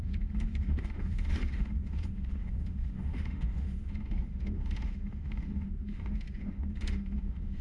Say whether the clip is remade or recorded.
remade